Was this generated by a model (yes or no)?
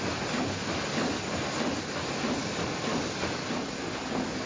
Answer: no